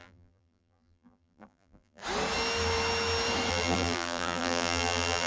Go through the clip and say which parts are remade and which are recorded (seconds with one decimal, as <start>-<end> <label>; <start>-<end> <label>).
0.0-2.0 remade; 2.0-3.5 recorded; 3.5-5.3 remade